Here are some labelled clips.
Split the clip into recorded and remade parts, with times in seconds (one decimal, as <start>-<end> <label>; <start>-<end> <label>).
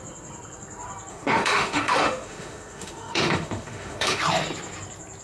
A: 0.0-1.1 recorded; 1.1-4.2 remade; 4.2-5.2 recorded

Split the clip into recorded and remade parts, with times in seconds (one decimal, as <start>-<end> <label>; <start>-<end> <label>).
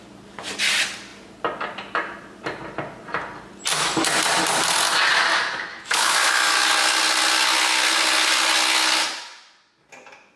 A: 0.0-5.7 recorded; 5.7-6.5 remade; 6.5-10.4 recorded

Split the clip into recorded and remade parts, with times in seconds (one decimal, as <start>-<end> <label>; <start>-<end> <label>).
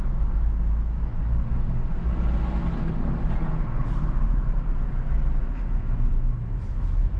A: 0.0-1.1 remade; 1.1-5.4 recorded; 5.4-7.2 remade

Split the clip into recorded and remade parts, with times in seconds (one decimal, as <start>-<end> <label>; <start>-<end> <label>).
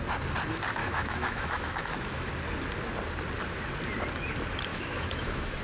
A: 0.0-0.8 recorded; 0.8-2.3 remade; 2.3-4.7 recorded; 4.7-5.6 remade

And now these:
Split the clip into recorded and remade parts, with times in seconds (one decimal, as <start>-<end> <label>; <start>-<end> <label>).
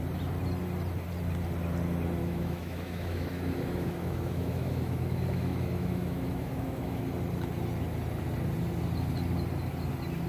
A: 0.0-2.2 recorded; 2.2-7.0 remade; 7.0-10.3 recorded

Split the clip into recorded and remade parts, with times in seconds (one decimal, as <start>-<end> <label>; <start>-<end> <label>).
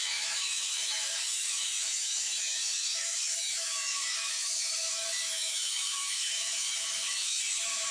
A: 0.0-7.9 remade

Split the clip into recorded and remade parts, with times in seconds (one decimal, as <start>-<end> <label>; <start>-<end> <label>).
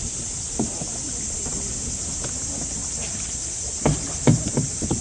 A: 0.0-5.0 recorded